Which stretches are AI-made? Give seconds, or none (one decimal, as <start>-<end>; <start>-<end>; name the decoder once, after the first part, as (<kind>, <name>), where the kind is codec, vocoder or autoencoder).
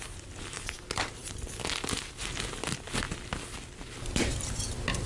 none